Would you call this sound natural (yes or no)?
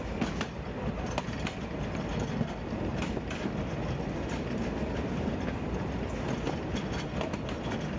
yes